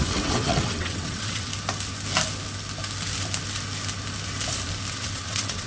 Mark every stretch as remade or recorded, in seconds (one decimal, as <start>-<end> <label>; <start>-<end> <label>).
0.0-1.5 remade; 1.5-4.9 recorded; 4.9-5.7 remade